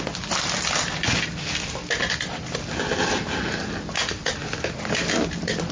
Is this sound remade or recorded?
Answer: recorded